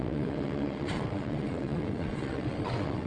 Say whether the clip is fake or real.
fake